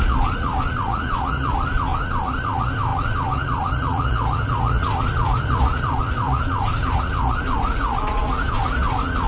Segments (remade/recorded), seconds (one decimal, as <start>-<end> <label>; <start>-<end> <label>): 0.0-9.3 remade